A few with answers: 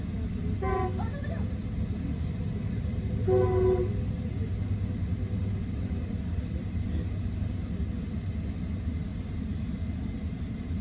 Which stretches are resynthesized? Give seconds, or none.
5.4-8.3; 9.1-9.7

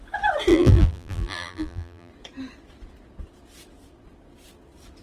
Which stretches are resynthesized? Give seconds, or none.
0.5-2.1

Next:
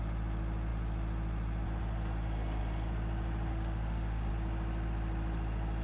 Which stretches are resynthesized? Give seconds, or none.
3.5-4.3